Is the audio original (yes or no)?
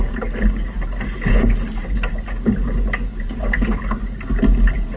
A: yes